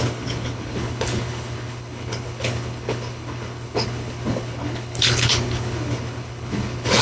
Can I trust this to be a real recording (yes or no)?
no